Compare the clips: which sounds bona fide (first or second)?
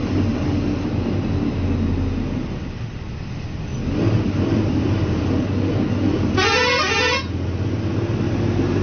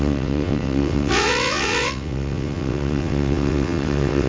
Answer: first